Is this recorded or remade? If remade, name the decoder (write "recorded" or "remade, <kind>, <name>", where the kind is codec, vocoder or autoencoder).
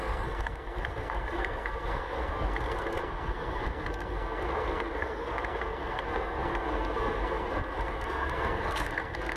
remade, codec, SNAC